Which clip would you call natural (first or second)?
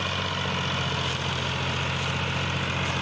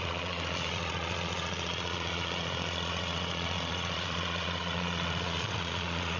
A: first